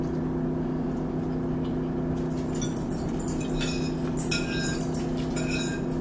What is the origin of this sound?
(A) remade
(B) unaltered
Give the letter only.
B